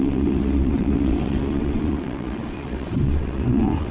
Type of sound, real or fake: fake